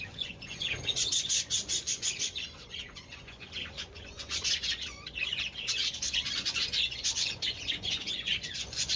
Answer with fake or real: fake